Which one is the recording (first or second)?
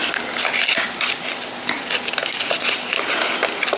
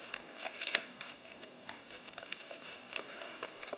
first